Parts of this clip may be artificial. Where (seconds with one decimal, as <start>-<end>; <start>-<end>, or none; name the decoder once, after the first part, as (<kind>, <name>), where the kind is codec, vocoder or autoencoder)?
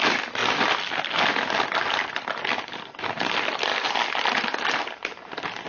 none